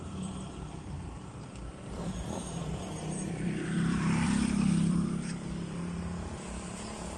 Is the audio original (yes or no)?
no